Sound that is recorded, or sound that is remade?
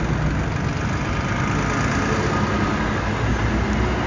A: recorded